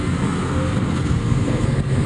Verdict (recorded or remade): remade